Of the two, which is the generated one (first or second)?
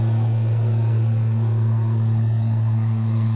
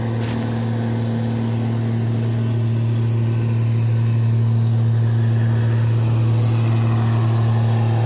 first